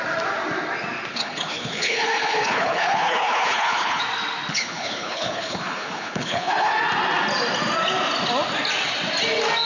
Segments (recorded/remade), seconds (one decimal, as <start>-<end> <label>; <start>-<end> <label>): 0.0-1.1 recorded; 1.1-4.0 remade; 4.0-4.5 recorded; 4.5-6.7 remade; 6.7-9.7 recorded